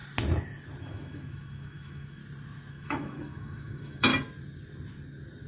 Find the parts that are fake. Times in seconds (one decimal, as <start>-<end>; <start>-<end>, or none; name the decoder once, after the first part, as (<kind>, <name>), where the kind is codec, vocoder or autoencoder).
0.8-2.2 (autoencoder, DAC-VAE); 2.7-4.1

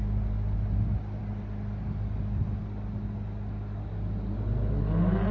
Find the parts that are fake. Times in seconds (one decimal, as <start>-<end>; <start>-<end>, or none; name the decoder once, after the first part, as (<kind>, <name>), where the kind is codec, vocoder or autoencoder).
none

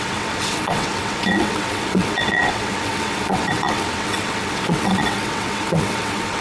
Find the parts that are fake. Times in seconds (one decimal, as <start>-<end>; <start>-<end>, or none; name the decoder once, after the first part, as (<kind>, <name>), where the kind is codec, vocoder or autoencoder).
0.0-6.4 (vocoder, WaveNeXt)